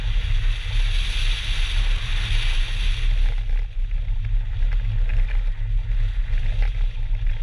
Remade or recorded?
recorded